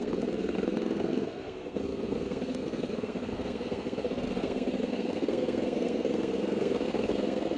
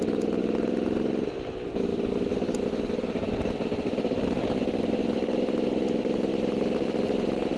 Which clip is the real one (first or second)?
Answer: second